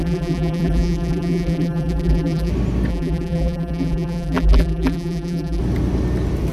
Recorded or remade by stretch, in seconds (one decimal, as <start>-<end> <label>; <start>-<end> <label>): 0.0-2.5 remade; 2.5-2.9 recorded; 2.9-5.6 remade; 5.6-6.5 recorded